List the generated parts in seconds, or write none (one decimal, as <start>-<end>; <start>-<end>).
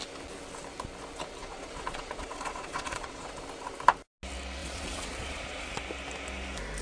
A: 1.4-3.3; 4.6-5.7